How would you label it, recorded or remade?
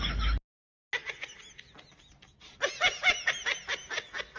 recorded